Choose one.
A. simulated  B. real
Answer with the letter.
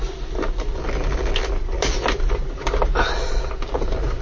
B